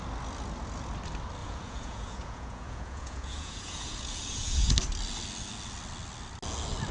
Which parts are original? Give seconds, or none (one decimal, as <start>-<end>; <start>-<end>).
0.0-1.4; 4.7-6.9